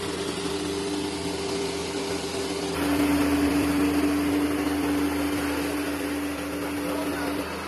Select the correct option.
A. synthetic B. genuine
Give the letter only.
B